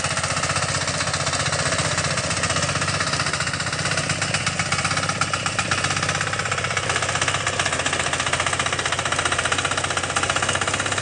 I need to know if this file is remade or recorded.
recorded